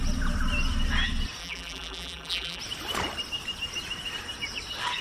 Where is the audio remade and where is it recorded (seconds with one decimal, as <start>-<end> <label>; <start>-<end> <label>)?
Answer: 0.0-1.4 recorded; 1.4-2.6 remade; 2.6-5.0 recorded